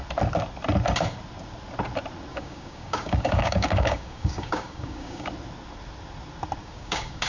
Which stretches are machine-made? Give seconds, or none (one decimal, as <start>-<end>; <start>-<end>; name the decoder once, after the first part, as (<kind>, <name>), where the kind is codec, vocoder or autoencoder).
2.3-5.3 (codec, DAC); 6.6-7.3

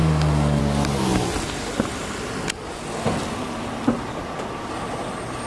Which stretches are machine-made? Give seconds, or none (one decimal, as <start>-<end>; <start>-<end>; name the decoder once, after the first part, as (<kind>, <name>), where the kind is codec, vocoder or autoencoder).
0.0-0.6 (codec, DAC)

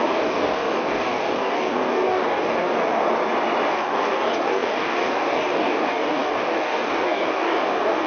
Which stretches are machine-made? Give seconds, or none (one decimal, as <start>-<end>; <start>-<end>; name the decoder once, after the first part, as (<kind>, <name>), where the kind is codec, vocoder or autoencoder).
0.0-3.0 (codec, DAC); 3.7-8.1

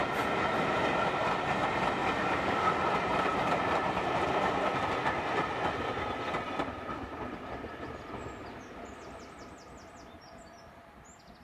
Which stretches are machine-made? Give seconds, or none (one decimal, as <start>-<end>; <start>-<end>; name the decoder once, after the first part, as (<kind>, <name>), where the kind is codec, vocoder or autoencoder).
2.0-2.7 (codec, DAC)

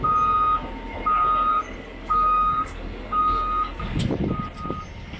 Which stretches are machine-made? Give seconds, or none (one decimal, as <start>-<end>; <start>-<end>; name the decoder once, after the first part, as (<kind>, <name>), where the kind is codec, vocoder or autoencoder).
1.5-4.0 (codec, DAC)